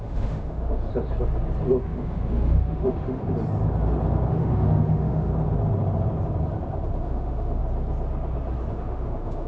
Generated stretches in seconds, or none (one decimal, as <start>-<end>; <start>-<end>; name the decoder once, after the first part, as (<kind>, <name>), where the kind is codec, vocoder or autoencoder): 0.0-0.9 (autoencoder, DAC-VAE); 1.8-3.2; 4.3-5.3; 7.0-7.6; 8.7-9.5